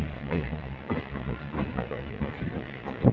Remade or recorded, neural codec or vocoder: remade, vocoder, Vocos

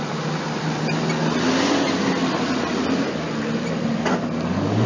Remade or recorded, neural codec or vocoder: recorded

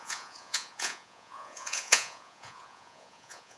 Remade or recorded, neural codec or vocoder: remade, vocoder, Vocos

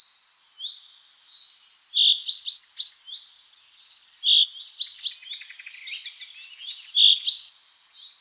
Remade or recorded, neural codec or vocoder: recorded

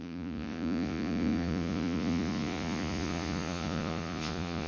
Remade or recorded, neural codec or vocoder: remade, vocoder, Vocos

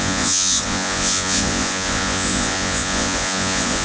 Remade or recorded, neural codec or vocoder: remade, vocoder, Vocos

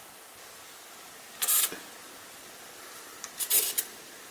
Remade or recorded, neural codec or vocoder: recorded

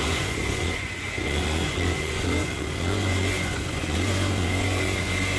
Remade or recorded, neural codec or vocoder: remade, vocoder, Vocos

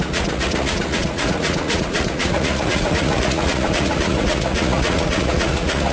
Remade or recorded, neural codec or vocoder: remade, vocoder, Vocos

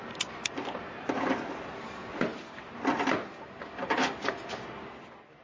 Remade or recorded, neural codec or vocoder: recorded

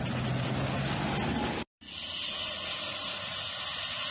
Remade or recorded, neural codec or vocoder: recorded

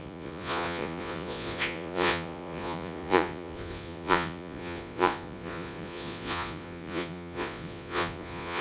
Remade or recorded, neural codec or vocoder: remade, vocoder, Vocos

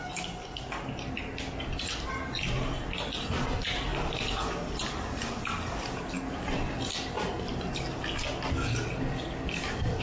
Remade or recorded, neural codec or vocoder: recorded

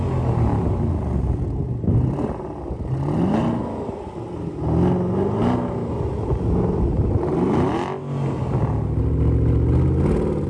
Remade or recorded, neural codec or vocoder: recorded